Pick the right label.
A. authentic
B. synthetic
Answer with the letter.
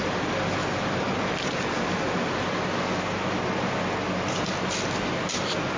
A